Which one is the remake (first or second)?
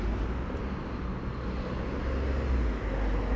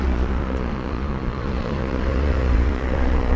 second